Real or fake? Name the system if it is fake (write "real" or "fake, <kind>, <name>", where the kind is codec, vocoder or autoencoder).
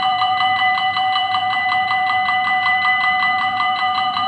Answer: fake, vocoder, BigVGAN v2